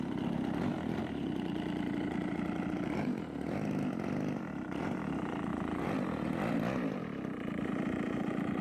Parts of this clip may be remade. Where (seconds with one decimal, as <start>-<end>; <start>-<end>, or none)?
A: none